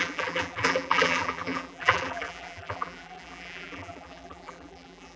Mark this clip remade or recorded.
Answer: remade